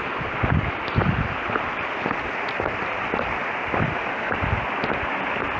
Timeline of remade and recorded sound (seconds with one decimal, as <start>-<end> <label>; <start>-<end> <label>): 0.0-5.6 recorded